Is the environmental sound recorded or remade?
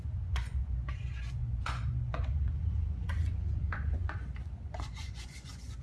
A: remade